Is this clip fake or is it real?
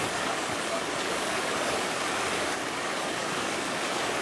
fake